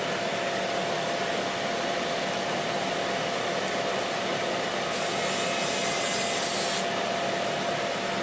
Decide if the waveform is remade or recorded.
recorded